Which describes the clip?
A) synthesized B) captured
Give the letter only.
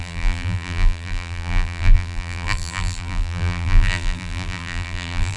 A